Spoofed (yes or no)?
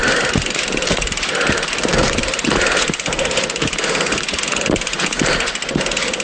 no